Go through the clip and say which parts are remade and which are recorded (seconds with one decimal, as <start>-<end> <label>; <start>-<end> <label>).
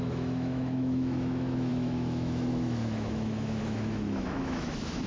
0.0-5.1 remade